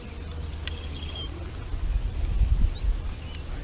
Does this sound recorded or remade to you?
recorded